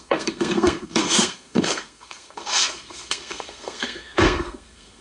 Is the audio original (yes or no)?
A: no